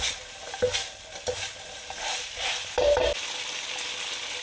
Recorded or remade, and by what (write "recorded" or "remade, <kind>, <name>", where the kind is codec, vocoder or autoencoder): recorded